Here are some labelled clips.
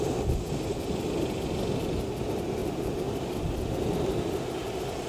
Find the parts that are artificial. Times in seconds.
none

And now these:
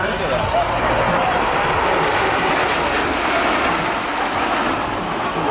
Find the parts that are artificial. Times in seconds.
1.2-1.8 (vocoder, BigVGAN v2)

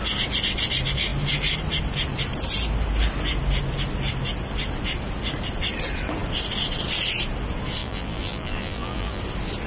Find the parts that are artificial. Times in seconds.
7.8-9.2 (vocoder, BigVGAN v2)